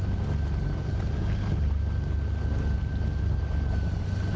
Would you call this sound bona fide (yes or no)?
yes